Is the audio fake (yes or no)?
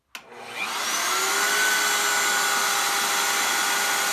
no